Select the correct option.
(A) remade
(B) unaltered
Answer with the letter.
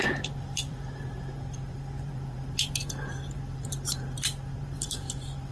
A